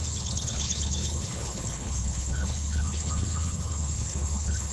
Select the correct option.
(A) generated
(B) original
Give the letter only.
A